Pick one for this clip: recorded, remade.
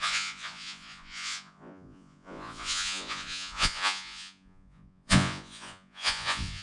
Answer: remade